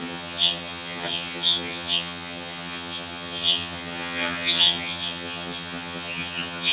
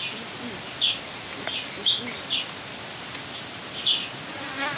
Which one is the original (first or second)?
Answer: second